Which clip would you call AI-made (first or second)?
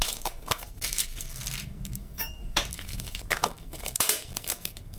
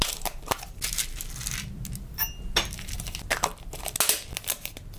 first